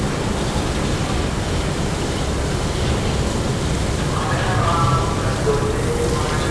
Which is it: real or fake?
real